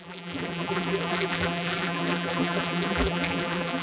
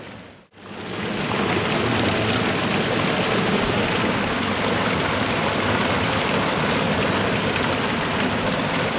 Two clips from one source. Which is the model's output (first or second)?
first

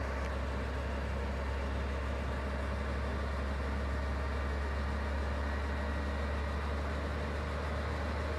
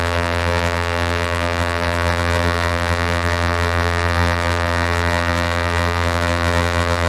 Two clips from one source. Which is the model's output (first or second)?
second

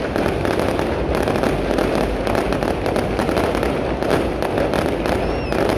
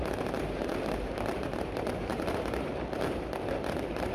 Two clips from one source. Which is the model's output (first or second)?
second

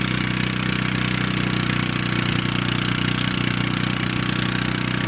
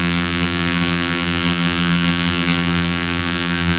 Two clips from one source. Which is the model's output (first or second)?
second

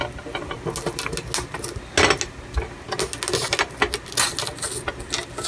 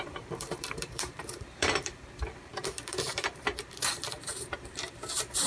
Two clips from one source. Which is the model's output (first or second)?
second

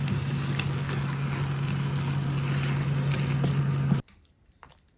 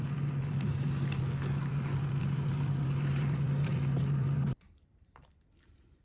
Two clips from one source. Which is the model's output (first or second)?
second